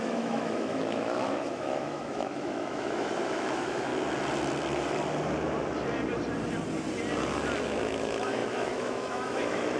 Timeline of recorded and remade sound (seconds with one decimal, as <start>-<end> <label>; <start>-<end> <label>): 0.0-3.9 remade; 3.9-7.6 recorded; 7.6-9.8 remade